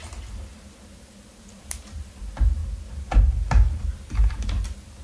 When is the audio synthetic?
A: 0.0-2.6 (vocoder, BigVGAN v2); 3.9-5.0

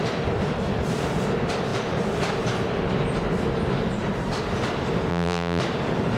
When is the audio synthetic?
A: 5.1-5.6 (vocoder, BigVGAN v2)

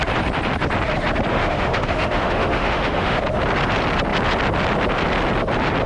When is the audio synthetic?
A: 1.3-3.2 (autoencoder, DAC-VAE)

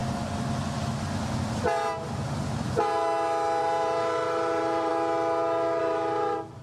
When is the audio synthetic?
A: 3.6-4.9 (vocoder, BigVGAN v2); 5.8-6.6

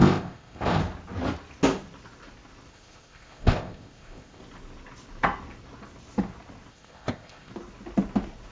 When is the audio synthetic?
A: 0.0-0.8 (codec, ZipCodec); 2.7-4.4; 6.7-7.5

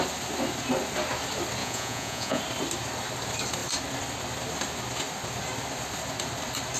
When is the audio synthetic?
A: 1.6-2.4 (vocoder, Vocos)